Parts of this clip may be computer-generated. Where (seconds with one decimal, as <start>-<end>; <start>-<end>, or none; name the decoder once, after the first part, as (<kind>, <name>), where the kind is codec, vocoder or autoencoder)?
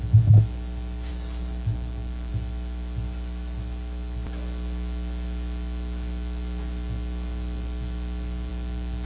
1.1-2.3 (codec, DAC)